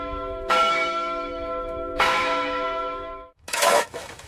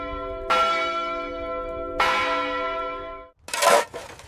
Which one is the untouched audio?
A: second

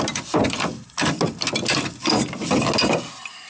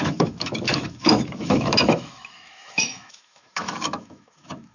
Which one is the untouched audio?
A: first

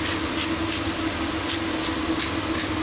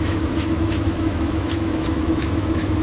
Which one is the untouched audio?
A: first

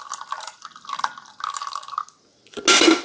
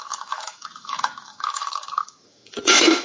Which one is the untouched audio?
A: first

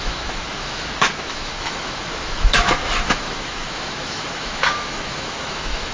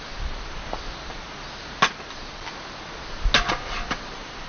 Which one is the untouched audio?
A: second